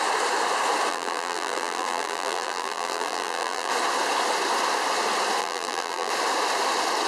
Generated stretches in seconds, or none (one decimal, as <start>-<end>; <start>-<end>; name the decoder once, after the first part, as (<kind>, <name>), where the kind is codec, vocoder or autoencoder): 0.9-3.7 (vocoder, BigVGAN v2); 5.4-6.1